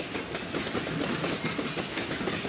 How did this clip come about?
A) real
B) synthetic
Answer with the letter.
A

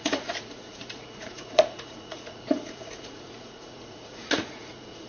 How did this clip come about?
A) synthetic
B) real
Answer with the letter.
A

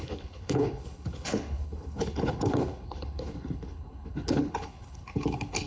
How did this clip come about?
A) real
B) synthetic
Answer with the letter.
B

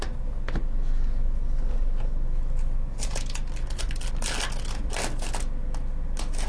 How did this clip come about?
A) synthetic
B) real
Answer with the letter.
B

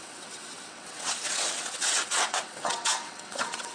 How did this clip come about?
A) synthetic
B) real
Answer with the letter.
A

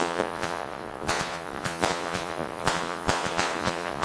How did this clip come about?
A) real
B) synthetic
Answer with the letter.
B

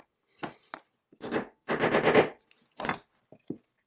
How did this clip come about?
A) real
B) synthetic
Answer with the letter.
A